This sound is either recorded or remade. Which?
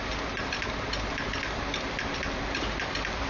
recorded